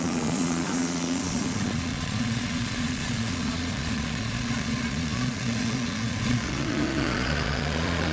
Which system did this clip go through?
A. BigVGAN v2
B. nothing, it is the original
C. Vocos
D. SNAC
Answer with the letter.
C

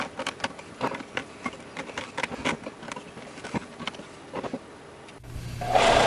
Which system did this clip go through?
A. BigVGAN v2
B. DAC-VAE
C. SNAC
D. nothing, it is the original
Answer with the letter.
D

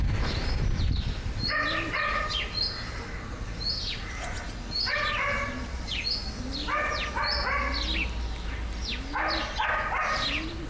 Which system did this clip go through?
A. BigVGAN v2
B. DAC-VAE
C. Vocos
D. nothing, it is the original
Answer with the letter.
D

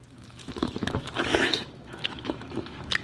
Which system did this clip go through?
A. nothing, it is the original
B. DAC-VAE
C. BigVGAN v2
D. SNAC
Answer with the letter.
B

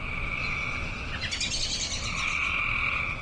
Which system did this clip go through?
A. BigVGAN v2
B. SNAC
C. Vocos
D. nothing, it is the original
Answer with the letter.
D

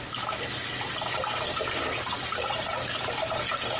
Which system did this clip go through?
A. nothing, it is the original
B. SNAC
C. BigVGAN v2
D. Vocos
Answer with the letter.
A